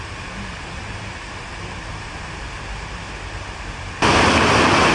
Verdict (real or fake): real